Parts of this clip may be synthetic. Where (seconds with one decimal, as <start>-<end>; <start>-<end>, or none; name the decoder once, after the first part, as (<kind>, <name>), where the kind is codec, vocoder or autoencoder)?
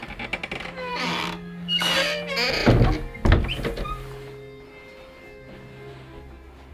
0.9-1.9 (codec, DAC)